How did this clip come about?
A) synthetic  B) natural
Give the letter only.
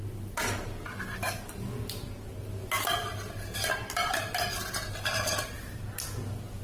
B